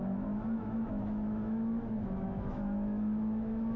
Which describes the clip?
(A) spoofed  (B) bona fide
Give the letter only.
A